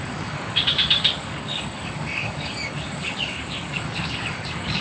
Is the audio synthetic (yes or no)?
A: yes